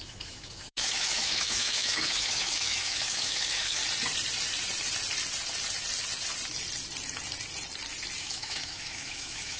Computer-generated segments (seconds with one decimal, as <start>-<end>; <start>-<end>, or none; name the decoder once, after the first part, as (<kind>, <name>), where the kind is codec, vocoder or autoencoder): 0.0-3.8 (autoencoder, DAC-VAE); 8.2-9.6